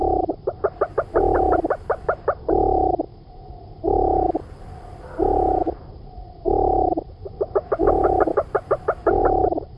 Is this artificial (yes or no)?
yes